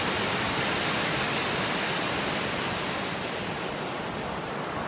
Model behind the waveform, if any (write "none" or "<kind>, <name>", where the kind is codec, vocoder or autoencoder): none